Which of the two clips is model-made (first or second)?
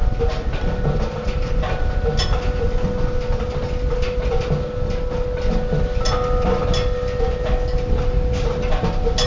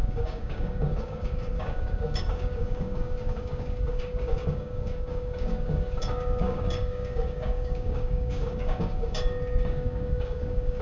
second